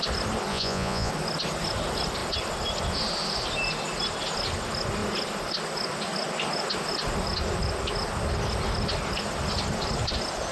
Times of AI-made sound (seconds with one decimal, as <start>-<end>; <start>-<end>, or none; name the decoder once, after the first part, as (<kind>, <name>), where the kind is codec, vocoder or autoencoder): 0.5-1.1 (vocoder, Vocos)